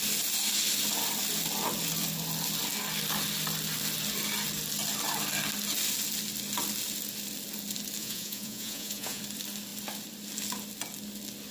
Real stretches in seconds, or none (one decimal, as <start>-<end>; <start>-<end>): 0.0-8.0; 9.2-11.5